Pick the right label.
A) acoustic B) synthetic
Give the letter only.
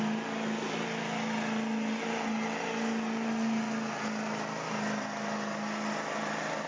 A